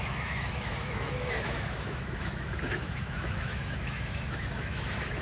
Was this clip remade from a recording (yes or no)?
yes